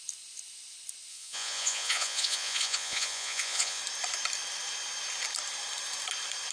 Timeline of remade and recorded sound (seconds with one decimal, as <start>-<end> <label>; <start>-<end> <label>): 0.0-1.1 recorded; 1.1-3.8 remade; 3.8-6.5 recorded